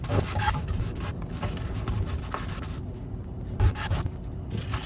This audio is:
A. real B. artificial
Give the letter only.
A